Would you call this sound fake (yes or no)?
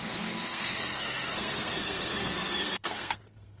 yes